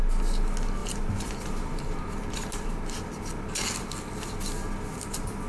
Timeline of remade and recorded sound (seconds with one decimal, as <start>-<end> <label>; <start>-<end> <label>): 0.0-0.8 recorded; 0.8-3.0 remade; 3.0-5.5 recorded